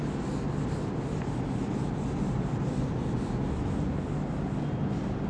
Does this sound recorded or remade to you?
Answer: recorded